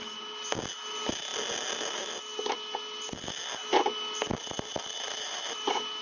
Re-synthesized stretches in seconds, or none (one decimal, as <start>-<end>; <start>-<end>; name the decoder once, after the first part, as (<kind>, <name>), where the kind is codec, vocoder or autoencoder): none